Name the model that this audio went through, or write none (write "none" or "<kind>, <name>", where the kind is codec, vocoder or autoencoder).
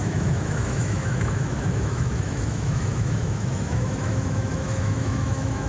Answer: autoencoder, DAC-VAE